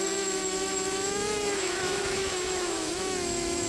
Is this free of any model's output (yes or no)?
no